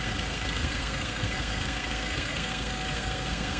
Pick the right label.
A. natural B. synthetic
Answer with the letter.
B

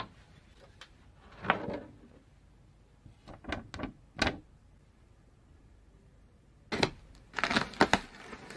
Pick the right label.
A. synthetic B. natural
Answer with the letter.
B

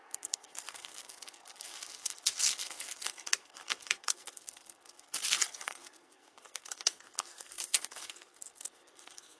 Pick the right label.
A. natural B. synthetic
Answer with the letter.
B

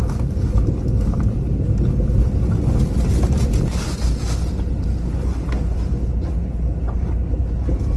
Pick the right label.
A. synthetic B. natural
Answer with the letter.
B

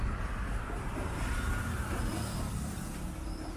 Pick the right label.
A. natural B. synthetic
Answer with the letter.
A